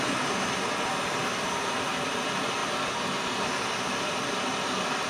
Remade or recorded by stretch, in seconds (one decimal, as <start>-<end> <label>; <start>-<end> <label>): 0.0-5.1 recorded

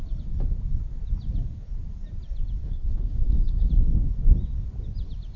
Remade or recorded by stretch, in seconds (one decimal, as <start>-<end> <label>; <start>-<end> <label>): 0.0-2.6 recorded; 2.6-3.7 remade; 3.7-5.4 recorded

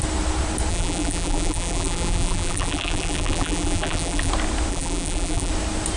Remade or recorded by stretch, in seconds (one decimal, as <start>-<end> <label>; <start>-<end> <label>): 0.0-0.7 recorded; 0.7-4.3 remade; 4.3-4.7 recorded; 4.7-5.5 remade; 5.5-6.0 recorded

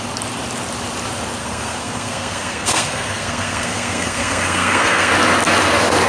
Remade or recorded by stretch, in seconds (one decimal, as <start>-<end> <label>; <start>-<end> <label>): 0.0-1.4 recorded; 1.4-5.1 remade; 5.1-6.1 recorded

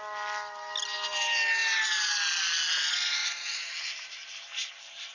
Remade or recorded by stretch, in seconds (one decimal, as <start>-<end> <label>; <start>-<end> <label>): 0.0-3.2 recorded; 3.2-5.1 remade

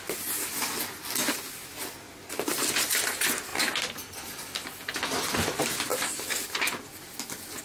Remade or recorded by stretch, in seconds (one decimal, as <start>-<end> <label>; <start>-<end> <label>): 0.0-5.9 recorded; 5.9-6.9 remade; 6.9-7.6 recorded